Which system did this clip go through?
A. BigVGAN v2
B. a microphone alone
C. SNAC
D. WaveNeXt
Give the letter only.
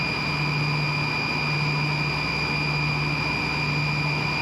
B